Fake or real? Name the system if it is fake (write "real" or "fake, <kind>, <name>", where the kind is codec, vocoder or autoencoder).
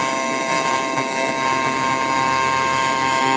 fake, autoencoder, DAC-VAE